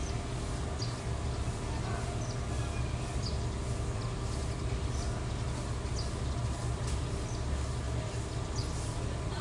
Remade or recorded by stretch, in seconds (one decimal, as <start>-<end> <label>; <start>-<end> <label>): 0.0-9.4 recorded